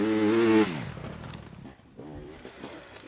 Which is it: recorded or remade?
recorded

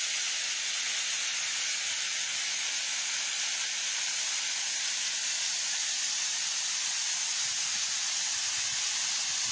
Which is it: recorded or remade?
recorded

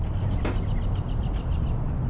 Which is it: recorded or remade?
recorded